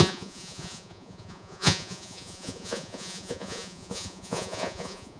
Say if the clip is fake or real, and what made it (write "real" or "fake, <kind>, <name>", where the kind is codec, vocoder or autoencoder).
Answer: fake, vocoder, Vocos